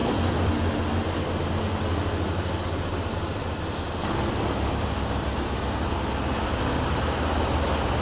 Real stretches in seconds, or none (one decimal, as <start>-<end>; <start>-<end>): 0.5-8.0